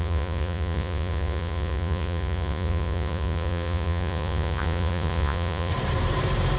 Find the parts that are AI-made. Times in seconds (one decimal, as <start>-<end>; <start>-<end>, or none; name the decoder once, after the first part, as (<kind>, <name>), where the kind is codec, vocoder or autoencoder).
0.0-5.7 (vocoder, Vocos)